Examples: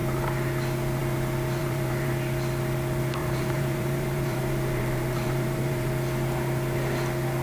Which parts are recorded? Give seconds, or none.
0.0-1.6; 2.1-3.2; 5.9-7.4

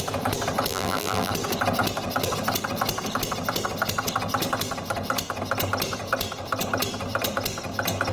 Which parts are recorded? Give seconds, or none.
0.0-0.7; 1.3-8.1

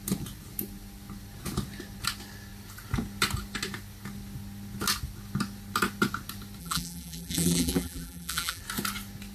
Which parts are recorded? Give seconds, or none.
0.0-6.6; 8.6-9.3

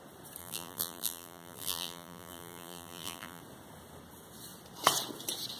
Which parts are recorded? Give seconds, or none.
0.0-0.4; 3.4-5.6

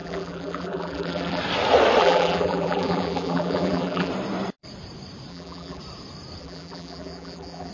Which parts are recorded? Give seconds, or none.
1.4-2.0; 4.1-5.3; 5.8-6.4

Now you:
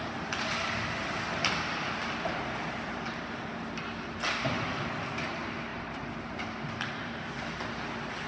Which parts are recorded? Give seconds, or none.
0.0-5.7; 7.3-8.3

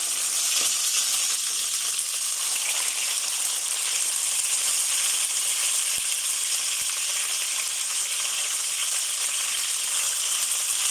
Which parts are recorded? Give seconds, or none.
0.0-10.9

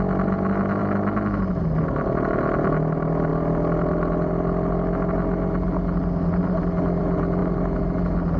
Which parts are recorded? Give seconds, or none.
0.0-8.4